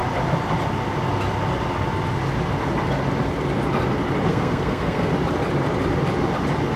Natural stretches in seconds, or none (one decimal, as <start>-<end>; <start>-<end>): 0.0-4.3; 5.1-6.8